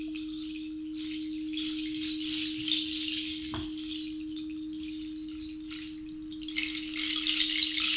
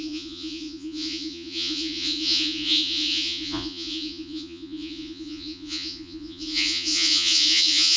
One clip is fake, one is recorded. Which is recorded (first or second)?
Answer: first